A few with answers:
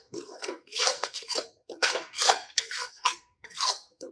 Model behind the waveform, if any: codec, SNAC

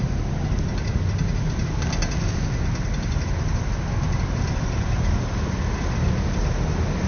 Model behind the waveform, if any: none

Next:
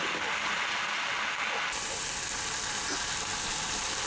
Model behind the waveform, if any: none